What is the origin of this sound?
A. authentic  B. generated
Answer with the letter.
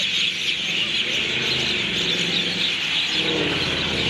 A